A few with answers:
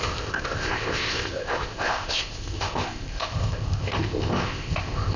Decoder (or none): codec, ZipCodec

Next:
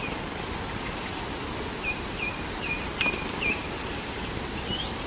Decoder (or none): vocoder, BigVGAN v2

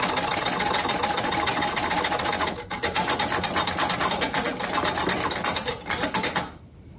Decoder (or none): none